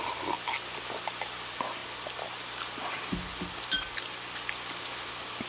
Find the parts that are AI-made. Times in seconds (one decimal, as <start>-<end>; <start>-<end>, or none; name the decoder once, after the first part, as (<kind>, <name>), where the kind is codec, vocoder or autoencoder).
0.0-1.8 (vocoder, BigVGAN v2); 5.1-5.5